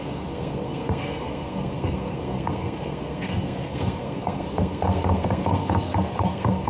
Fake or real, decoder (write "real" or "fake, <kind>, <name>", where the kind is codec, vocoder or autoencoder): fake, codec, SNAC